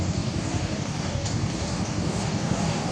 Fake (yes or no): yes